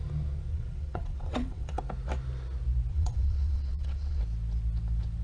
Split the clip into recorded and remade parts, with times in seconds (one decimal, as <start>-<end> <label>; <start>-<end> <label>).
0.0-0.5 recorded; 0.5-1.8 remade; 1.8-2.9 recorded; 2.9-4.2 remade; 4.2-5.2 recorded